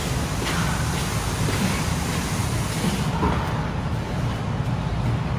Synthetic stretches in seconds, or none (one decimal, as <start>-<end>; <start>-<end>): none